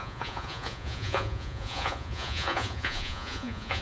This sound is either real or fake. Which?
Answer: fake